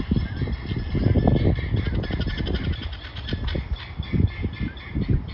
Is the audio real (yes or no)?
yes